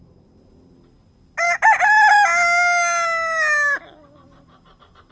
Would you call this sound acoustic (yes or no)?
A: yes